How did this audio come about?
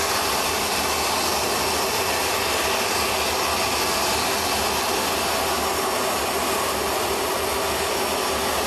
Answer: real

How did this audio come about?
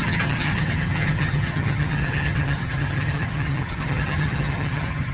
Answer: fake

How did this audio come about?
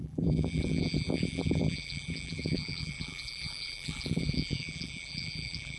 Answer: fake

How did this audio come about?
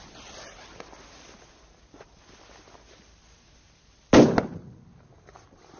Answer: real